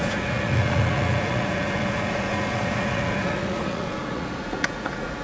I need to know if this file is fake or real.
fake